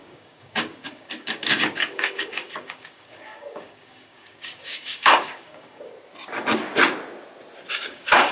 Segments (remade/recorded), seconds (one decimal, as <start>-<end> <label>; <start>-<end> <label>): 0.0-5.9 remade; 5.9-7.7 recorded; 7.7-8.3 remade